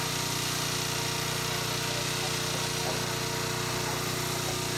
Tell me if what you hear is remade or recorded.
recorded